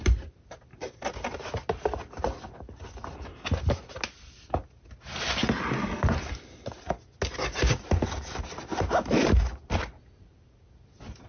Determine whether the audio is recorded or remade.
recorded